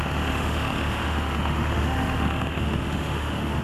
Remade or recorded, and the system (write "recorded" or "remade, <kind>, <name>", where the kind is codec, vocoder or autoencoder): remade, autoencoder, DAC-VAE